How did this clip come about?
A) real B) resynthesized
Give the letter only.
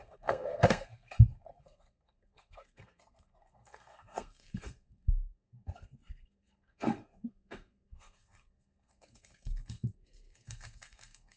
B